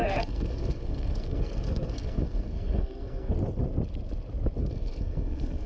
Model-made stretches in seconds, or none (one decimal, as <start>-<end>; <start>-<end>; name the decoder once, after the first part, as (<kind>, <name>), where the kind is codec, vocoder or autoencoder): 0.0-3.3 (codec, SNAC); 4.6-5.7